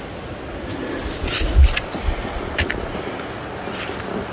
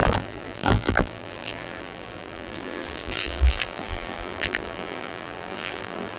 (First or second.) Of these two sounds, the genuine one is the first